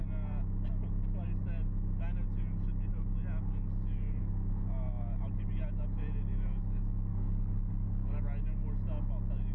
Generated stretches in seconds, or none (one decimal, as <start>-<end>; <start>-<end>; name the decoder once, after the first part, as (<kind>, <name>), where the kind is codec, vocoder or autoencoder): 7.1-8.2 (codec, DAC)